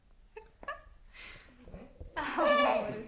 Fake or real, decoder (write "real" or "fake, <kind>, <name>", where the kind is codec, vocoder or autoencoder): real